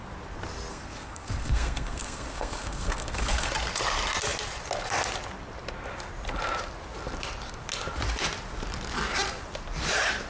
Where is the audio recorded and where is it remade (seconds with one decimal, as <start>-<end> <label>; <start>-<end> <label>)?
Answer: 0.0-0.7 recorded; 0.7-3.5 remade; 3.5-10.3 recorded